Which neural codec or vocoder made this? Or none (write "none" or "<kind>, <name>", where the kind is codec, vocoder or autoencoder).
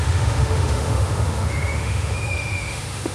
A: autoencoder, DAC-VAE